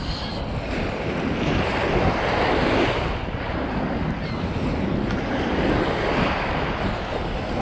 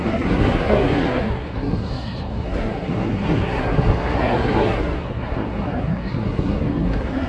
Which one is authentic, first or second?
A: first